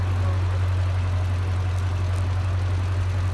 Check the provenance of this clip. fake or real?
real